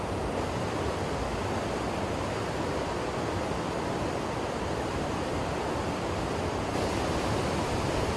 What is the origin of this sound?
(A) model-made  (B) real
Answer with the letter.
B